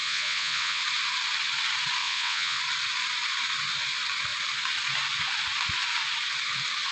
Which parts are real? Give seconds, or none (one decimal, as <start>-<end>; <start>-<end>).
0.8-2.0; 2.6-6.9